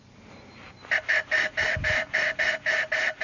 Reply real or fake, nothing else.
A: real